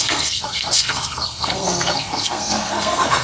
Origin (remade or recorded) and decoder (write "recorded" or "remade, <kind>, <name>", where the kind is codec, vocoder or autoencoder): remade, codec, SNAC